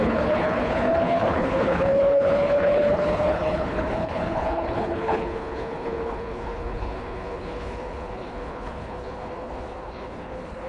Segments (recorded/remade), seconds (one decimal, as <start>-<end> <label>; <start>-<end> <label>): 0.0-10.7 remade